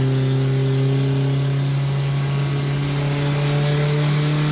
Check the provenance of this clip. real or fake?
real